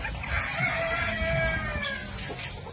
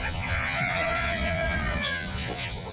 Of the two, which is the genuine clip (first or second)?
first